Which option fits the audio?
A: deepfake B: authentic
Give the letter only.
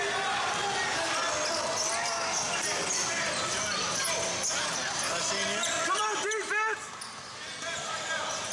B